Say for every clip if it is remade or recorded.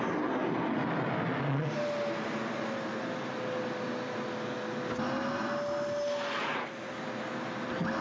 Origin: recorded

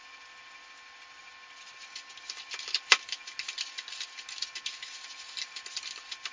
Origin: recorded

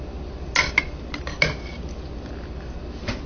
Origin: recorded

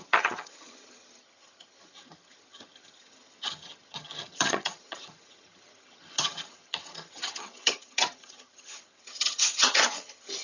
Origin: remade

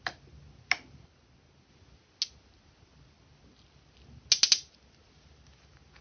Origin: recorded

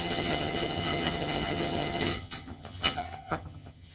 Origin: remade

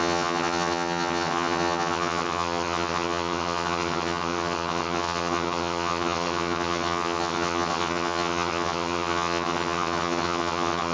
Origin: remade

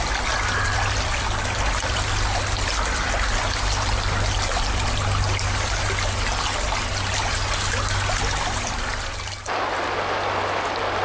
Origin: recorded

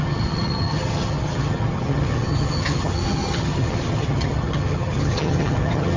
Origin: remade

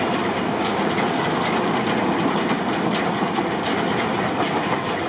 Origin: recorded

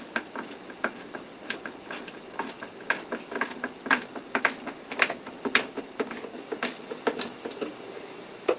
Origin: recorded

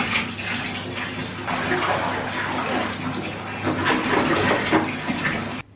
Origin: recorded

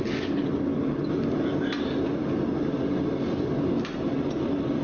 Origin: recorded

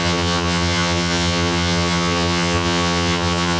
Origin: remade